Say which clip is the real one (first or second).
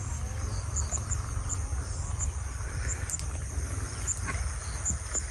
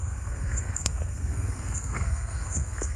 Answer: first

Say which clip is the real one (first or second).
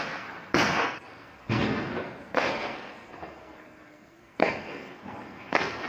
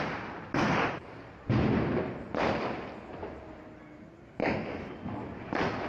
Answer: second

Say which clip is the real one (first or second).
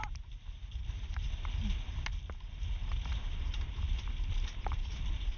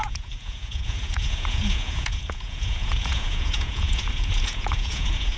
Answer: first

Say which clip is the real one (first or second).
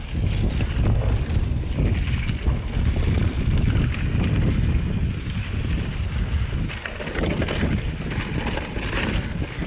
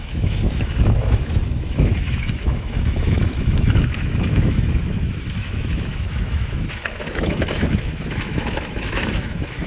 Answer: first